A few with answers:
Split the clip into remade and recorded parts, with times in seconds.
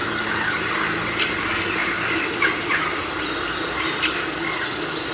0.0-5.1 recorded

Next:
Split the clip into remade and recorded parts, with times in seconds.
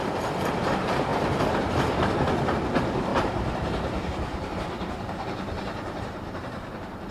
0.0-3.1 recorded; 3.1-7.1 remade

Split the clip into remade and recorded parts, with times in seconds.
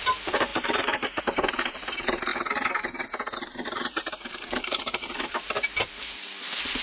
0.0-2.3 remade; 2.3-4.1 recorded; 4.1-6.8 remade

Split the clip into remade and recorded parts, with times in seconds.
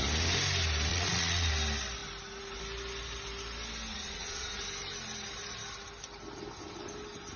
0.0-0.9 recorded; 0.9-1.5 remade; 1.5-3.9 recorded; 3.9-4.5 remade; 4.5-7.4 recorded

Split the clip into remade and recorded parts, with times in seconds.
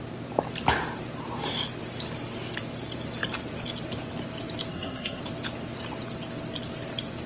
0.0-4.7 recorded; 4.7-5.2 remade; 5.2-7.3 recorded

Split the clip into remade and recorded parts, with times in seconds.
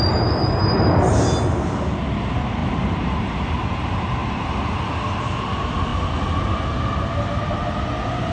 0.0-2.6 recorded; 2.6-3.2 remade; 3.2-4.2 recorded; 4.2-4.8 remade; 4.8-8.3 recorded